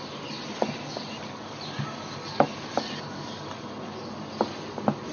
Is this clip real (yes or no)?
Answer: yes